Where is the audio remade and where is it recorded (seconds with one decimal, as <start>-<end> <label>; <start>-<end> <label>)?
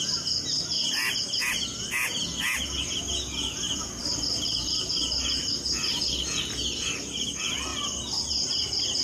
0.0-4.0 recorded; 4.0-5.0 remade; 5.0-9.0 recorded